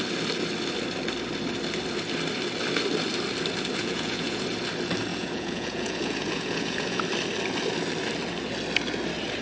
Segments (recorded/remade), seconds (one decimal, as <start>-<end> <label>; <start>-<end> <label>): 0.0-3.8 recorded; 3.8-4.4 remade; 4.4-5.1 recorded; 5.1-7.0 remade; 7.0-9.4 recorded